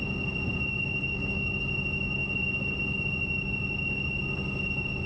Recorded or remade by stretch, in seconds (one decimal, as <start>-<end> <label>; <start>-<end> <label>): 0.0-0.9 recorded; 0.9-1.7 remade; 1.7-5.1 recorded